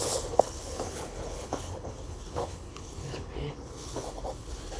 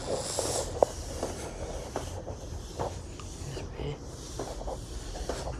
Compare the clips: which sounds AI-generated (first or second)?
first